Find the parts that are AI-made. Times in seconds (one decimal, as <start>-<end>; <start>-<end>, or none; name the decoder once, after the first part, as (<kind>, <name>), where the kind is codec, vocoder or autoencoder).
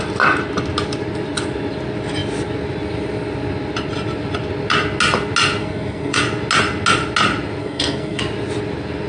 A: 5.6-6.2 (codec, SNAC); 7.6-8.2